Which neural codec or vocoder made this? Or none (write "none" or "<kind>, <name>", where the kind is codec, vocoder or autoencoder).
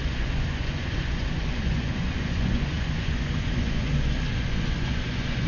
vocoder, Vocos